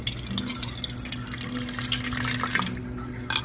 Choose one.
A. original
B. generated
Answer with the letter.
A